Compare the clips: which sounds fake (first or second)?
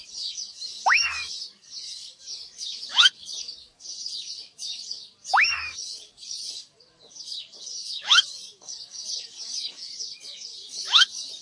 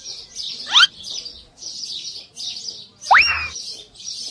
first